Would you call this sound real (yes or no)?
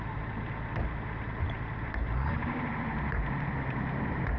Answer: no